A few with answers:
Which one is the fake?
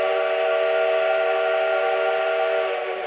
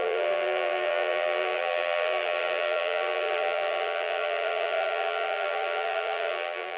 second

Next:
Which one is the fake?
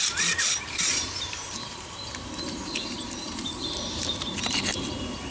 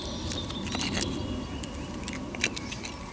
first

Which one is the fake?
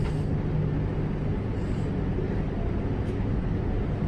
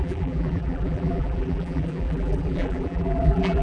second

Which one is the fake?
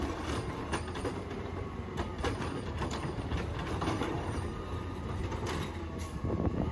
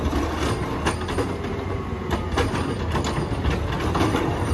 first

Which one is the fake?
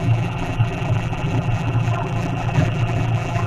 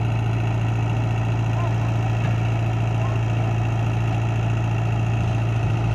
first